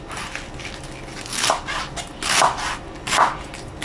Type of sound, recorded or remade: recorded